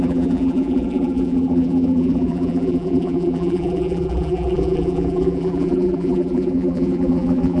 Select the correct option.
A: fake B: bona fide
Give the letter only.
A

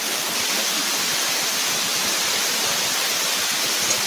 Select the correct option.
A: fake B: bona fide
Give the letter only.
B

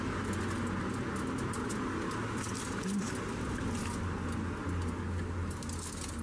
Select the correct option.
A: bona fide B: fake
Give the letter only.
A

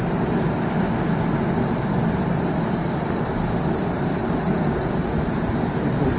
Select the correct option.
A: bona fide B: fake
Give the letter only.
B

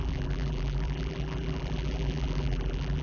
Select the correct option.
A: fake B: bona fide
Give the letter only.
A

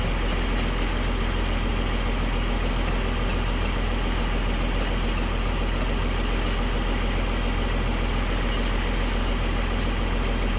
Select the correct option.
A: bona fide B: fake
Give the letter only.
A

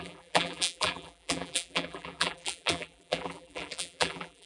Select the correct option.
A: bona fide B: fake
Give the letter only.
B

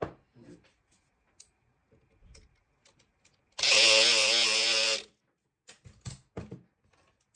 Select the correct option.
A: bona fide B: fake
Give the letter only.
A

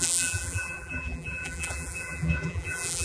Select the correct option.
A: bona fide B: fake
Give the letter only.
B